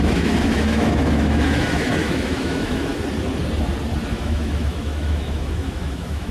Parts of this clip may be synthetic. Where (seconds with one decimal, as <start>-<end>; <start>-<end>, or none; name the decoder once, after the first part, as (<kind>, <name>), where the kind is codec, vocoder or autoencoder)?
0.0-2.9 (autoencoder, DAC-VAE); 4.1-6.3